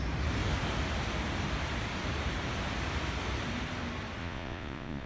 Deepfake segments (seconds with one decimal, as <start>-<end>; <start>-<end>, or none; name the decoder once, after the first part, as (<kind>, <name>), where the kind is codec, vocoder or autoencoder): 4.2-5.1 (vocoder, Vocos)